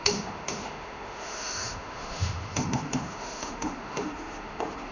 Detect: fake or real fake